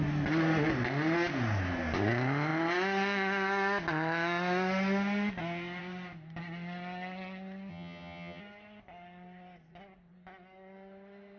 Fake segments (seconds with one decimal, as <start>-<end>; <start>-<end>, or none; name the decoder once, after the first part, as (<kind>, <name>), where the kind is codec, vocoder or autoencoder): 7.7-8.4 (vocoder, HiFi-GAN)